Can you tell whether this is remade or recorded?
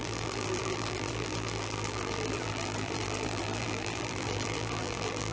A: remade